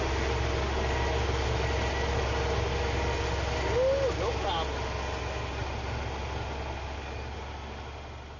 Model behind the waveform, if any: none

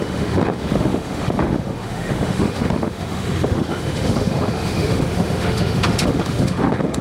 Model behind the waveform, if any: autoencoder, DAC-VAE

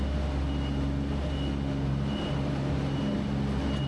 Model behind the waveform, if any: none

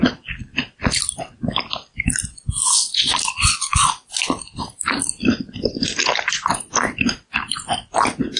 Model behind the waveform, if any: none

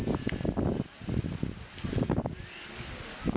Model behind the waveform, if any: none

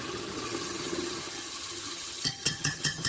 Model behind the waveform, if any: vocoder, HiFi-GAN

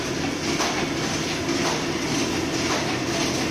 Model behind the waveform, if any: none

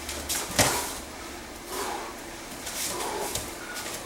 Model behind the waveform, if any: none